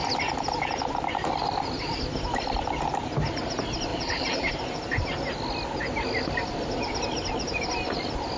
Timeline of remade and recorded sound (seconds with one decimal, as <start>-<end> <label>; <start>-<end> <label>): 0.0-3.9 recorded; 3.9-4.5 remade; 4.5-8.4 recorded